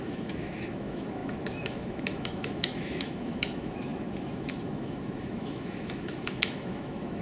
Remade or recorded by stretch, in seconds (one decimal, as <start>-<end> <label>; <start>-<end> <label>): 0.0-7.2 remade